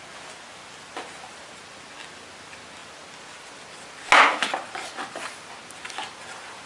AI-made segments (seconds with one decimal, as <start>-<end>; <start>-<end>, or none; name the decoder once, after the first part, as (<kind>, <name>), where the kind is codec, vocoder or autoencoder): none